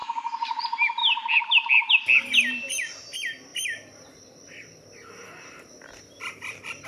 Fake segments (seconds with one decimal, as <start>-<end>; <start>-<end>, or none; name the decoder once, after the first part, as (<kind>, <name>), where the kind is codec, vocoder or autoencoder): 0.0-0.6 (vocoder, BigVGAN v2); 3.5-4.2